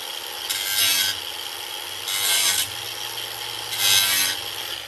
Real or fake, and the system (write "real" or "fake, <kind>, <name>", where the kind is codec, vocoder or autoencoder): real